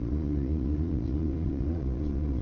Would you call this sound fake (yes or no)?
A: yes